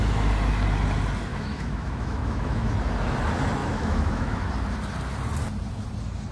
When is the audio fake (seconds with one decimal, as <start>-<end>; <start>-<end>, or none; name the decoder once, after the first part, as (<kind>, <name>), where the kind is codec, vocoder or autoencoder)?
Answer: 1.3-2.7 (autoencoder, DAC-VAE); 3.6-4.5